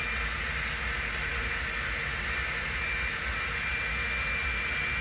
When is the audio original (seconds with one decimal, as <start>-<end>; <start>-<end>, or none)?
0.0-5.0